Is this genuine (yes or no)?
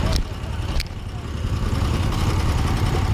yes